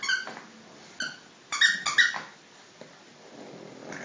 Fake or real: real